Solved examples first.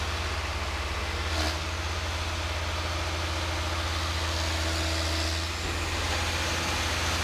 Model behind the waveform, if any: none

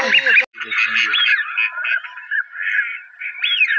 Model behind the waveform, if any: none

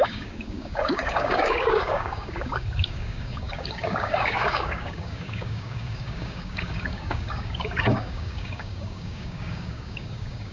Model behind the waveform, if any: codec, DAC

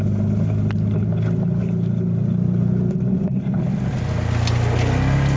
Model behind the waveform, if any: none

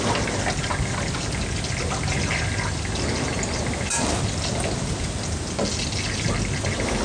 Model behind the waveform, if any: none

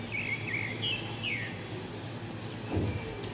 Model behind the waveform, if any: none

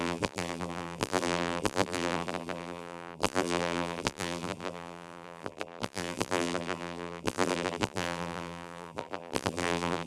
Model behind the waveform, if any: vocoder, BigVGAN v2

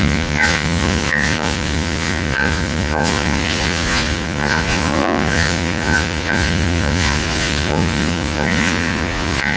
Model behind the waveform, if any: vocoder, Vocos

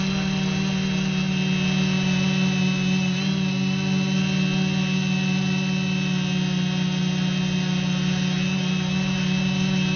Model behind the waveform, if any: none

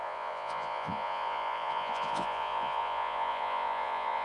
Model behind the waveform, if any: vocoder, Vocos